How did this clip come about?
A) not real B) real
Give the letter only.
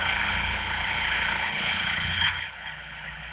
A